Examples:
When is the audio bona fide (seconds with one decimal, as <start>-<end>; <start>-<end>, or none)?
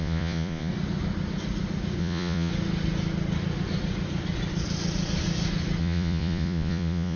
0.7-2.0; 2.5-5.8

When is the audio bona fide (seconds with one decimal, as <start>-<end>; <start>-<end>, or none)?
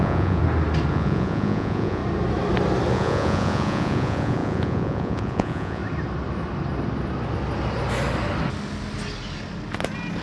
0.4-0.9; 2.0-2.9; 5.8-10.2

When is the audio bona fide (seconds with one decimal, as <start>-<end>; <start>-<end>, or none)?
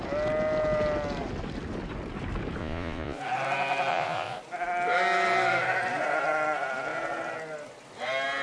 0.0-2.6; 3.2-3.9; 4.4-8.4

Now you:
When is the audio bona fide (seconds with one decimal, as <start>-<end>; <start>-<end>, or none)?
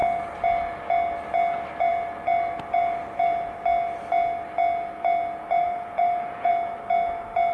0.0-5.6; 6.5-7.5